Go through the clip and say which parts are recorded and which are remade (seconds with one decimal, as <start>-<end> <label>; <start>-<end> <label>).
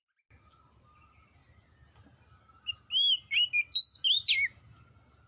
0.0-5.3 recorded